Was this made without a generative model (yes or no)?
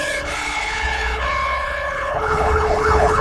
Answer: no